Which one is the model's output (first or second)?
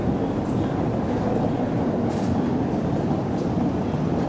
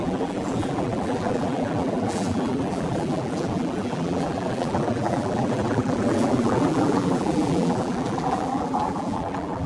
second